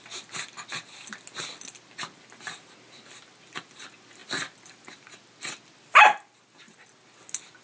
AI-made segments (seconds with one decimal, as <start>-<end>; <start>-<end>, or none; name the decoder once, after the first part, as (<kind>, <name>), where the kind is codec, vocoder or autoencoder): none